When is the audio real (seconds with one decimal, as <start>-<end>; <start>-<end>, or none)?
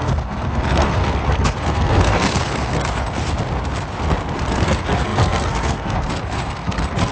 3.2-4.5